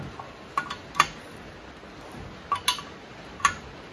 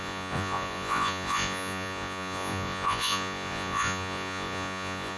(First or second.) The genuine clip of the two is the first